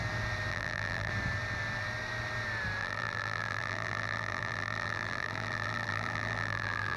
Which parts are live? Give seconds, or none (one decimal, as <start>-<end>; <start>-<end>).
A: 0.0-0.5; 1.1-2.8